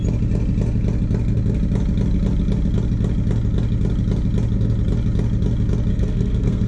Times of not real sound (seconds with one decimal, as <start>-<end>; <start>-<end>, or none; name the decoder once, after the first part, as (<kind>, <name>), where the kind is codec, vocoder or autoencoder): 5.9-6.7 (codec, SNAC)